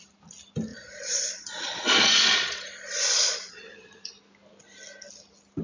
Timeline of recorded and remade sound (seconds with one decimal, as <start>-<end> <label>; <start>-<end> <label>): 0.0-0.7 recorded; 0.7-4.1 remade; 4.1-5.6 recorded